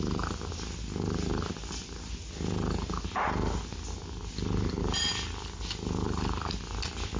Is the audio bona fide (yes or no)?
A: yes